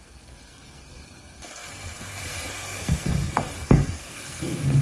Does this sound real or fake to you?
fake